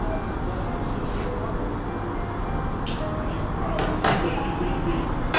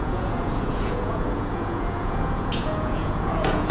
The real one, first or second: first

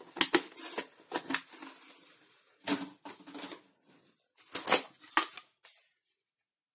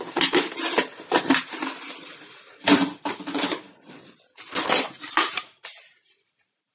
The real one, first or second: first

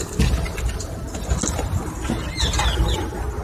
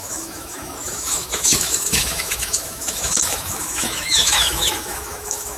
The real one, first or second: first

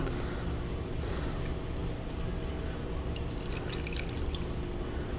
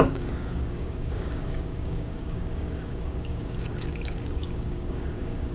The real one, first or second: first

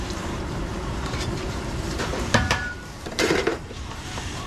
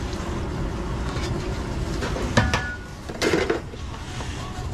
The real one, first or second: second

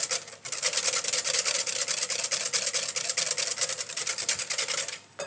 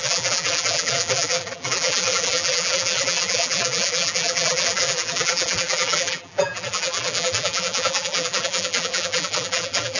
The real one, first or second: first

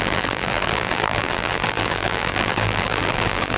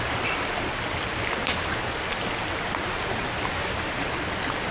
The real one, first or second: second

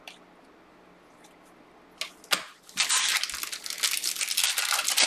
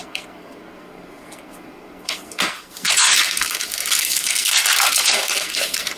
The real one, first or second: first